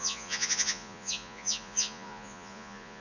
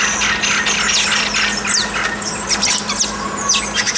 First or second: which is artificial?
first